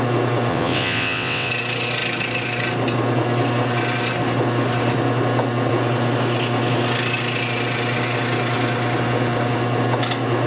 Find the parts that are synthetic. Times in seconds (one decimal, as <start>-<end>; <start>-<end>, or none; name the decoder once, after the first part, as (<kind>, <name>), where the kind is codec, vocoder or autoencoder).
0.5-1.5 (vocoder, WaveNeXt)